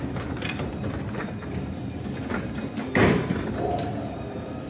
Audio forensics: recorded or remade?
remade